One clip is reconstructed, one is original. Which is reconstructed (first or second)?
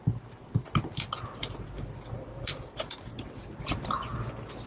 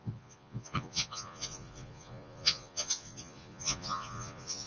second